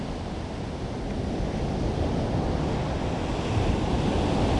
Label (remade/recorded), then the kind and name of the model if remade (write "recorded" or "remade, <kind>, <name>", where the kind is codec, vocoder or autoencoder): recorded